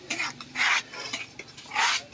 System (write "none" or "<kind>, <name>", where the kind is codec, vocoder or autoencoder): none